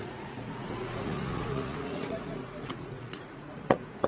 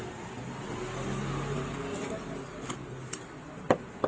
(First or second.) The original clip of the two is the second